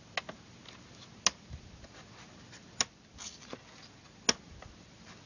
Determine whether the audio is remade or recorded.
recorded